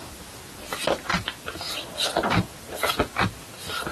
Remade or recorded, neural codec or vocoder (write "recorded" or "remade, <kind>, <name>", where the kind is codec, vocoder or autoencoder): recorded